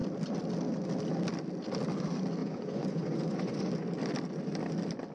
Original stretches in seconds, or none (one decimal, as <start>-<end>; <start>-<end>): 0.0-2.4; 3.6-5.1